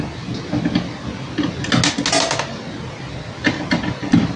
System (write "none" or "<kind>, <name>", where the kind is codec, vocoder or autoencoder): none